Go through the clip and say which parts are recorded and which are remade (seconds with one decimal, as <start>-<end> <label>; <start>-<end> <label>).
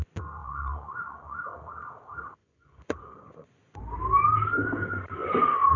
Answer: 0.0-0.4 recorded; 0.4-1.7 remade; 1.7-2.4 recorded; 2.4-3.8 remade; 3.8-5.8 recorded